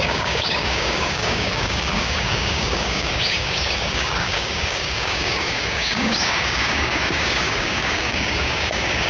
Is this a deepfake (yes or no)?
yes